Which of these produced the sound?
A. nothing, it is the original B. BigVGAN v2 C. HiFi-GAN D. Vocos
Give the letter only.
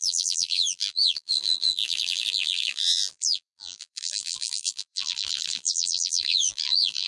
B